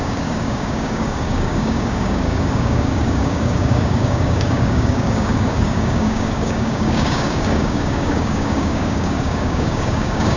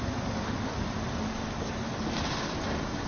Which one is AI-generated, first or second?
first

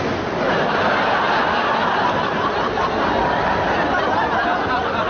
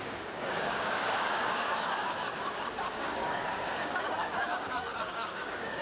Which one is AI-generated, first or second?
second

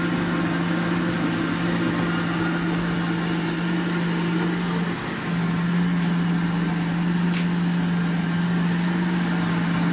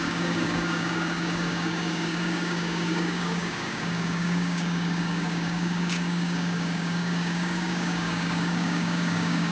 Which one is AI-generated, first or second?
second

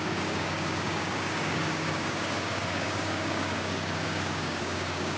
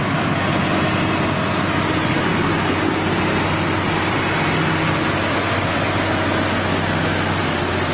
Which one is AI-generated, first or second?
first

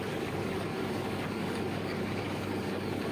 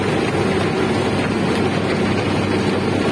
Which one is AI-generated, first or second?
first